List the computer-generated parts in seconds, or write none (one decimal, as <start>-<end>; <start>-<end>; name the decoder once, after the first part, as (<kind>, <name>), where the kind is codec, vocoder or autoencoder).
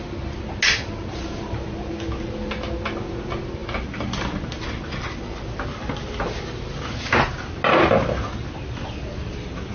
none